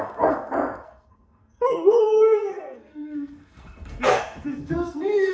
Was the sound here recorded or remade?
remade